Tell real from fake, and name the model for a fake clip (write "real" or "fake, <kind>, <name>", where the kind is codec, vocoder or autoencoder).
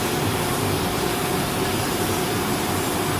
fake, vocoder, BigVGAN v2